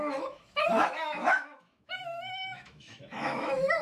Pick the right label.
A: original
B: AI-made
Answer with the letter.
B